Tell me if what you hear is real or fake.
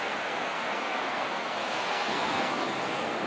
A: fake